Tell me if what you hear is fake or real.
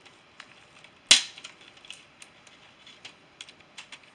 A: real